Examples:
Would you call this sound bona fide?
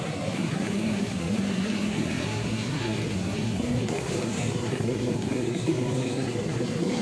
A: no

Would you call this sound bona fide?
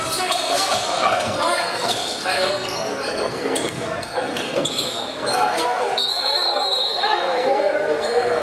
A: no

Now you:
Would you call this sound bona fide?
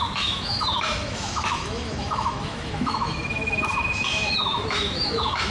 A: no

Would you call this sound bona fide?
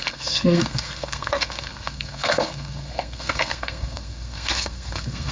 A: no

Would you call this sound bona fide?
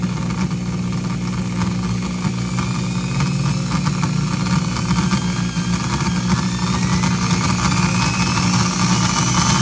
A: yes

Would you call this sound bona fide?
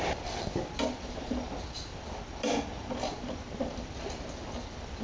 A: yes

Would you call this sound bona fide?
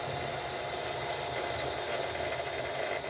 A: yes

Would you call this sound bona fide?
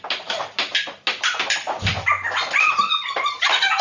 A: yes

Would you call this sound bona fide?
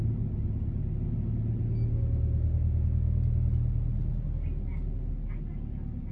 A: yes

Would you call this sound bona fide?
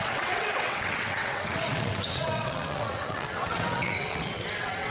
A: no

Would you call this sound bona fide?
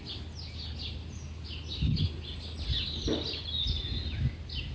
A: yes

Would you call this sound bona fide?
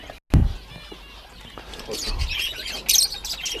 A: yes